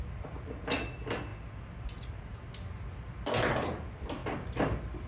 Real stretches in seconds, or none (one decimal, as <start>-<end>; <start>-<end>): 0.0-5.1